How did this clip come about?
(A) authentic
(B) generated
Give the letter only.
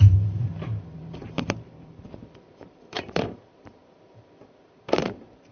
B